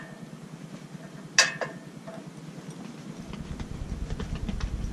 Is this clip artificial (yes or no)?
no